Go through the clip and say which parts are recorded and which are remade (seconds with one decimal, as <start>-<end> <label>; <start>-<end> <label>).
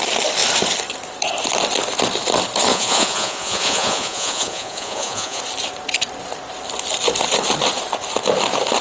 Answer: 0.0-2.7 recorded; 2.7-5.4 remade; 5.4-8.8 recorded